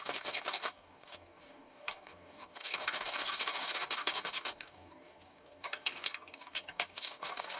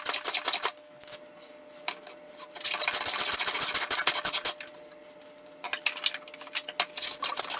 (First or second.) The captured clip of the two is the second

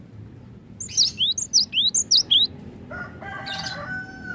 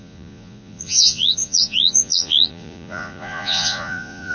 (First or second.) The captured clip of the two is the first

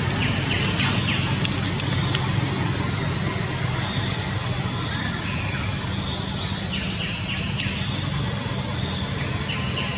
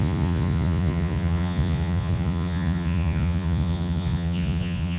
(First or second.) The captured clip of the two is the first